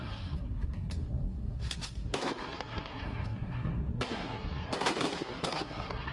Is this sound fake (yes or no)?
yes